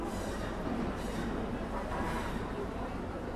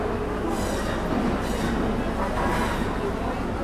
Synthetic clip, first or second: first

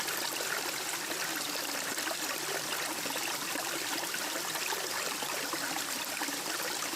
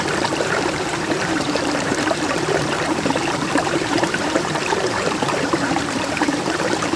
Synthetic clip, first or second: second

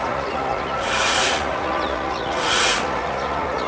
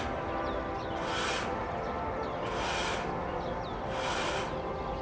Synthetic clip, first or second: first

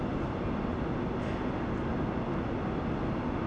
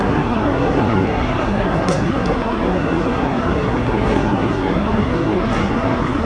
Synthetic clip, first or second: second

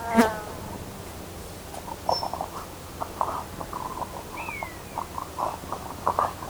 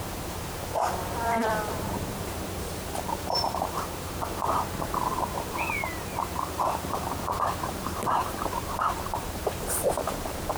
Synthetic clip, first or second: second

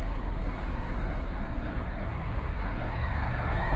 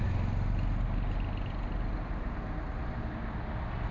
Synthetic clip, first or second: first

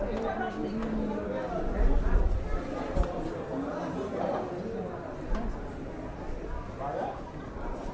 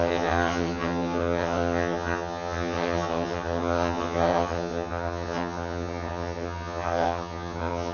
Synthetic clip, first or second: second